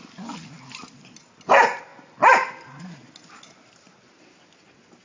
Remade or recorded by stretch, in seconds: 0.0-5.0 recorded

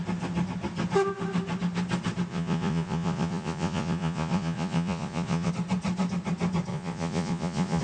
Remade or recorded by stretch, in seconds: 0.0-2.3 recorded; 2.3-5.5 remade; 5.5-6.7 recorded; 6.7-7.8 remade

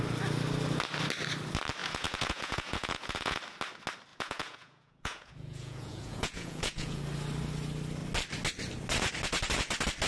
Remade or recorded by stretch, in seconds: 0.0-1.8 recorded; 1.8-3.4 remade; 3.4-4.1 recorded; 4.1-7.0 remade; 7.0-10.1 recorded

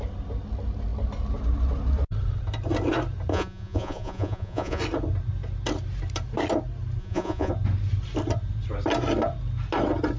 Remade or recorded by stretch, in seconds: 0.0-3.3 recorded; 3.3-4.8 remade; 4.8-7.0 recorded; 7.0-7.5 remade; 7.5-10.2 recorded

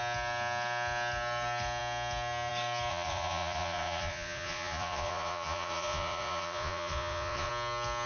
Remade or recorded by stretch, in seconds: 0.0-2.9 recorded; 2.9-7.5 remade; 7.5-8.1 recorded

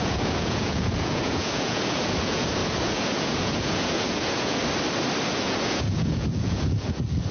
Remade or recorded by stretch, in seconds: 0.0-4.6 remade; 4.6-5.3 recorded; 5.3-7.3 remade

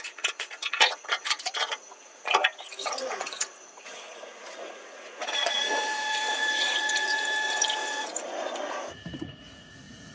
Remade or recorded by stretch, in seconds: 0.0-10.1 remade

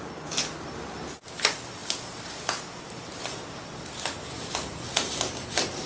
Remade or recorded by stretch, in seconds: 0.0-5.9 recorded